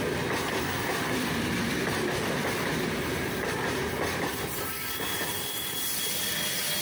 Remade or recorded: recorded